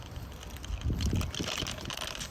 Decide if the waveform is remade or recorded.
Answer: recorded